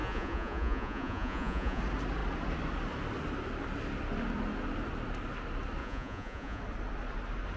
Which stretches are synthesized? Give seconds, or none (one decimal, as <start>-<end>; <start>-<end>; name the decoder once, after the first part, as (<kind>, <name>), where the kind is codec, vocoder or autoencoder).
0.0-1.8 (vocoder, Vocos); 5.8-6.6